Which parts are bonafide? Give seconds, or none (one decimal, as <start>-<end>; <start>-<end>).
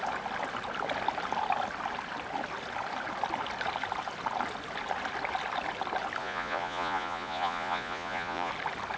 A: 0.0-6.2; 8.5-9.0